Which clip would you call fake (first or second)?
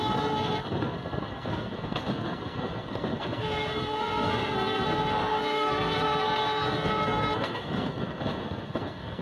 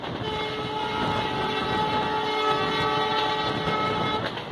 first